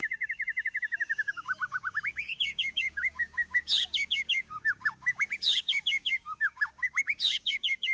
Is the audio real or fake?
fake